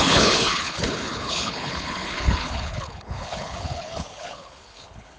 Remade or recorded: remade